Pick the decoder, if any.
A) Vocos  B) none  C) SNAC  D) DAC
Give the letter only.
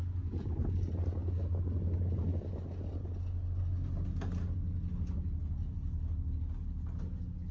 B